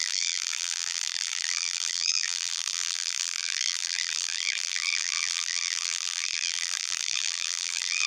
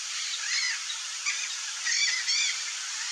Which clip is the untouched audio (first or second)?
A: second